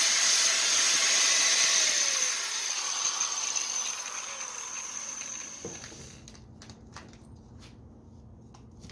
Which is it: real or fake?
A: real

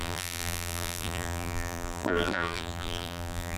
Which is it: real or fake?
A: fake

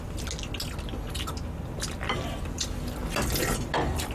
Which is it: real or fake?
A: real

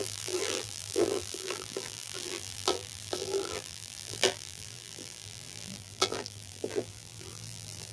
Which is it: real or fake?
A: fake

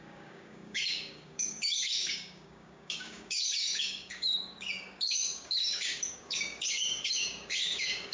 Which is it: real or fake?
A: fake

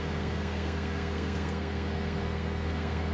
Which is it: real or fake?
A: fake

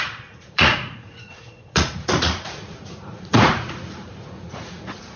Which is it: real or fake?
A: fake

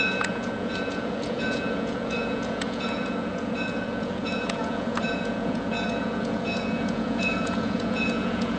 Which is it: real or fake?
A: fake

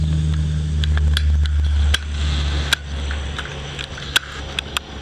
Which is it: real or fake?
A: real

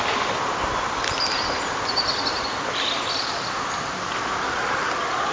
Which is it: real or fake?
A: real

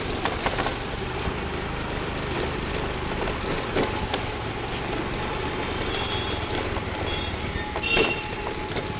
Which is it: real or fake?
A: real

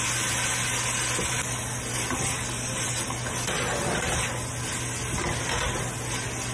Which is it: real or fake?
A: real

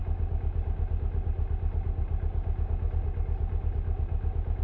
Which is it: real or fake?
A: real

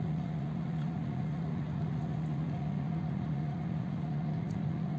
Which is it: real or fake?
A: fake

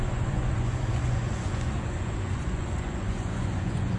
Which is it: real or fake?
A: fake